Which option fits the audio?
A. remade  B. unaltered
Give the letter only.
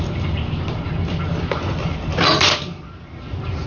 A